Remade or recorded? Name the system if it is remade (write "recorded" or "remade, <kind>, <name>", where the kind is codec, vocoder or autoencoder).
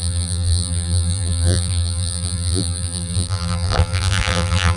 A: remade, vocoder, BigVGAN v2